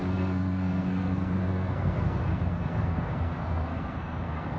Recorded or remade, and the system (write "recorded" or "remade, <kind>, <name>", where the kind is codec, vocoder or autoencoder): remade, codec, SNAC